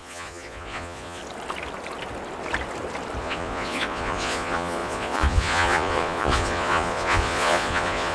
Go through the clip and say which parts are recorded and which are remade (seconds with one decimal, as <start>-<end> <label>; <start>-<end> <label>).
0.0-1.2 remade; 1.2-3.2 recorded; 3.2-8.1 remade